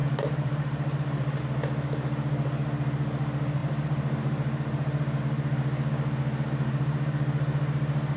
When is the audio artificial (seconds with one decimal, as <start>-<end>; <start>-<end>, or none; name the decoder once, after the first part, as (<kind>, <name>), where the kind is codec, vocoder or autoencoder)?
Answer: 0.0-1.4 (vocoder, BigVGAN v2); 3.6-5.2